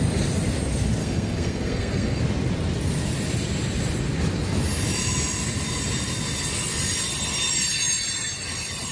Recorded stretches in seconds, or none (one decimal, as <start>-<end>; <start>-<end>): 0.0-1.0; 2.2-8.9